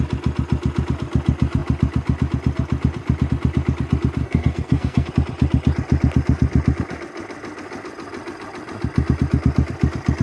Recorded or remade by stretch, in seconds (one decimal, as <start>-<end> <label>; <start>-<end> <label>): 0.0-4.2 recorded; 4.2-5.1 remade; 5.1-10.2 recorded